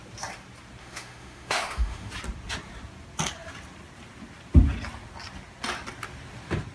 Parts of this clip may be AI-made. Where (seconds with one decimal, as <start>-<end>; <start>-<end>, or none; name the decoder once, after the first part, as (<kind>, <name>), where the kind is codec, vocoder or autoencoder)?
0.8-2.1 (autoencoder, DAC-VAE)